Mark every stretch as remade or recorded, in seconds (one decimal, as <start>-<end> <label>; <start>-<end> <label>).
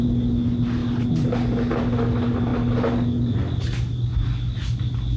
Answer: 0.0-5.2 recorded